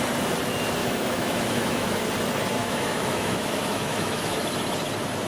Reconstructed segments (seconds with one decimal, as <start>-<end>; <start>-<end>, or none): 0.8-2.0; 2.6-4.5